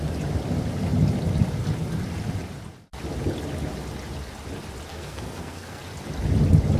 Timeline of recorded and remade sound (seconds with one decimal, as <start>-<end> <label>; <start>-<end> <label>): 0.0-4.9 recorded; 4.9-5.8 remade; 5.8-6.8 recorded